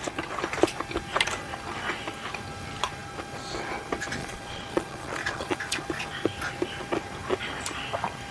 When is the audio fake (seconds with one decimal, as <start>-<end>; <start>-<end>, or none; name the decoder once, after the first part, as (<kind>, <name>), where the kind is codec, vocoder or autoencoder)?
4.2-5.6 (vocoder, Vocos)

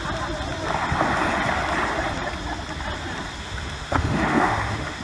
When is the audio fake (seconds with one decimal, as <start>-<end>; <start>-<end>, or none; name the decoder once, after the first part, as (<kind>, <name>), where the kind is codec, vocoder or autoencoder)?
3.4-5.0 (autoencoder, DAC-VAE)

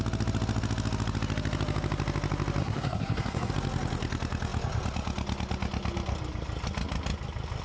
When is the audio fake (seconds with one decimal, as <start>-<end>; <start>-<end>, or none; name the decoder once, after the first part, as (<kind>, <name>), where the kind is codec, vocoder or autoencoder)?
2.6-3.5 (codec, SNAC)